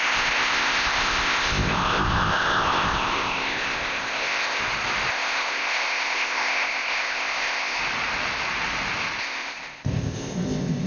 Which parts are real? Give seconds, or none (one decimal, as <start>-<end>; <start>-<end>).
4.6-5.1; 7.8-9.2